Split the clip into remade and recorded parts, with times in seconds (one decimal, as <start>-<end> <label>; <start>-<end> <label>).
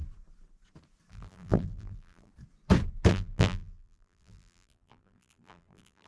0.0-1.1 recorded; 1.1-2.3 remade; 2.3-3.1 recorded; 3.1-6.1 remade